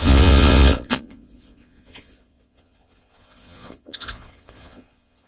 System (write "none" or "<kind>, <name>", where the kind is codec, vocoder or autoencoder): vocoder, Vocos